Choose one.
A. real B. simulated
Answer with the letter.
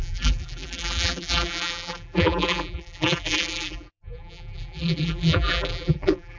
B